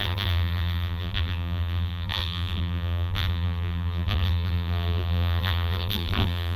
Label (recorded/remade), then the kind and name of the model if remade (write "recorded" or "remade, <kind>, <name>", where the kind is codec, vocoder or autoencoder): remade, vocoder, BigVGAN v2